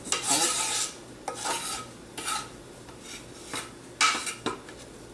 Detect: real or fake real